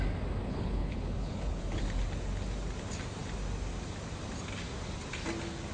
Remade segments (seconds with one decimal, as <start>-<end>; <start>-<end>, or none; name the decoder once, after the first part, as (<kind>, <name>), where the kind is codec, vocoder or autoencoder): 0.4-1.8 (codec, HILCodec)